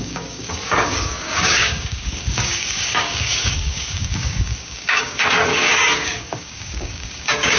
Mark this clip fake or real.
fake